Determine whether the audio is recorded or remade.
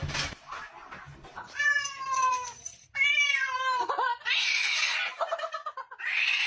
recorded